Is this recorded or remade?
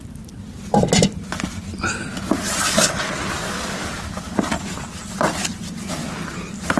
remade